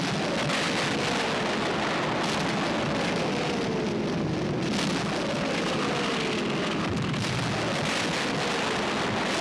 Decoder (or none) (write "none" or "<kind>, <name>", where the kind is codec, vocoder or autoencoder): none